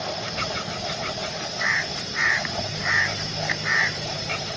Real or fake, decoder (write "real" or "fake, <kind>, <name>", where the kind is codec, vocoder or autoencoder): fake, vocoder, BigVGAN v2